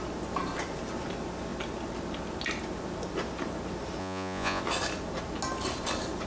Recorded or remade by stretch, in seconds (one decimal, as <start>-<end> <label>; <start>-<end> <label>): 0.0-4.0 recorded; 4.0-4.6 remade; 4.6-6.3 recorded